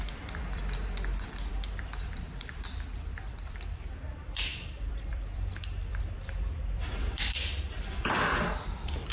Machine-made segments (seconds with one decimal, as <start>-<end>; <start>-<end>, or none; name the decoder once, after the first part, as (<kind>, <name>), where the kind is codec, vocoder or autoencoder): 0.0-9.1 (vocoder, BigVGAN v2)